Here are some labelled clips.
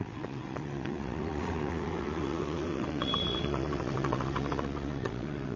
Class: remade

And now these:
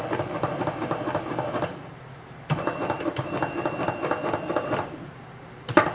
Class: remade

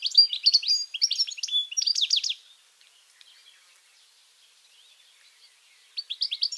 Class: recorded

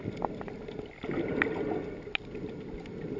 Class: recorded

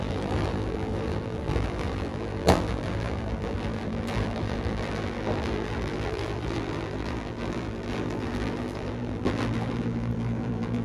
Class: remade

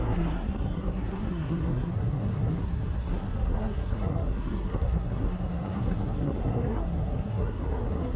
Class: remade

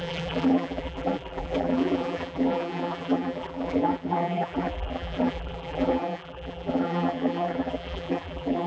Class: remade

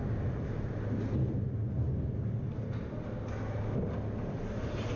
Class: recorded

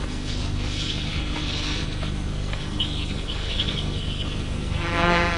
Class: remade